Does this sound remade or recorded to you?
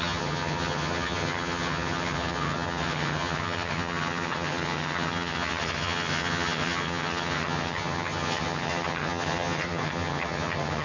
remade